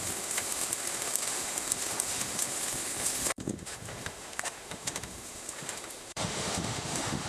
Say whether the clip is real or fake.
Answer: fake